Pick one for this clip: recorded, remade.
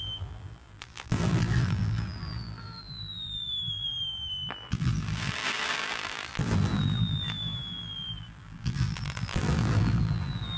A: remade